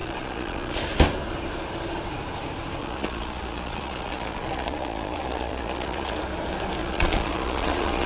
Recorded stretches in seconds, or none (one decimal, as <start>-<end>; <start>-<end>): 0.8-2.8; 6.2-6.8